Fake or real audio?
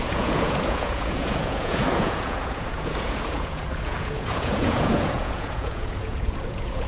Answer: fake